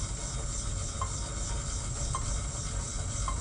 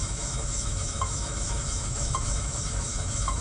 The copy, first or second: second